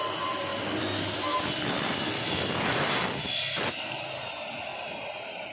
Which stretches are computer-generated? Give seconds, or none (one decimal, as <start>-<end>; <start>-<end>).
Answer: 0.0-4.7